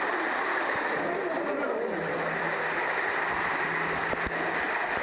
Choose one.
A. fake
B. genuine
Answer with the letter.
B